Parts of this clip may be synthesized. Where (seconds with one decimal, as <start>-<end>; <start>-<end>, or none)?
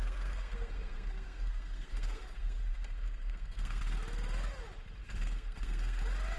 0.0-3.8; 5.0-6.0